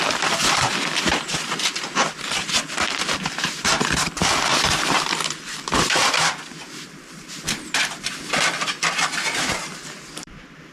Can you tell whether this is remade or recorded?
remade